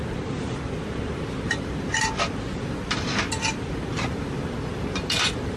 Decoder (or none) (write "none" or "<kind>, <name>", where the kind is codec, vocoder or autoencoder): none